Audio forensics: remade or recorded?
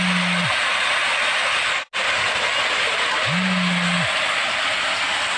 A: recorded